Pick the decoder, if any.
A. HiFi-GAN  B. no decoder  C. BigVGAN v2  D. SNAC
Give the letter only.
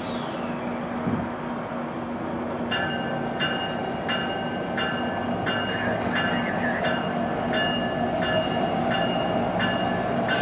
B